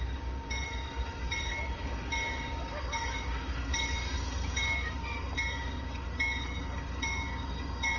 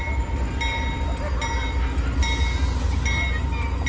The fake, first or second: first